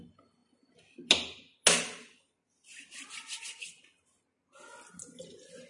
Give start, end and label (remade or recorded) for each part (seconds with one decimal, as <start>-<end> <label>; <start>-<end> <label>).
0.0-5.7 recorded